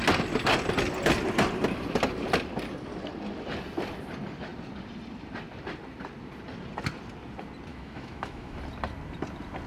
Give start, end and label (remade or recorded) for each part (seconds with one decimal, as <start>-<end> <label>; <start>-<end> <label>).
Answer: 0.0-7.7 recorded; 7.7-8.6 remade; 8.6-9.7 recorded